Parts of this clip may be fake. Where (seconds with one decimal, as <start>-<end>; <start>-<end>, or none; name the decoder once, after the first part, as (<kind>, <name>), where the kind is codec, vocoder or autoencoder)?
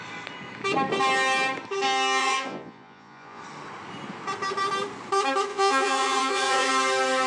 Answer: 2.2-3.4 (vocoder, Vocos); 5.5-6.7